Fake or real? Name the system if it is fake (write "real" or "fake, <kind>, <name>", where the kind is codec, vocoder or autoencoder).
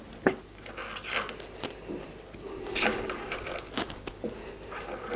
real